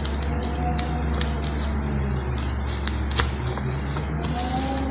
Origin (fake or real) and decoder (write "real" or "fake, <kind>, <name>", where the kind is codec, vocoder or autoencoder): real